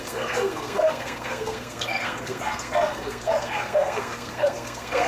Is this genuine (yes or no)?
no